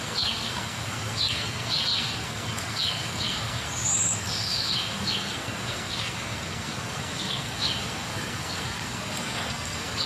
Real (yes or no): no